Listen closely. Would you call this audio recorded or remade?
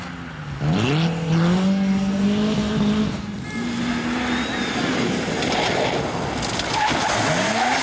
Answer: recorded